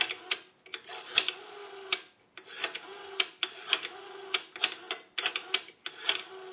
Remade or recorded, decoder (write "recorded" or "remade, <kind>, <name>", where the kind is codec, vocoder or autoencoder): recorded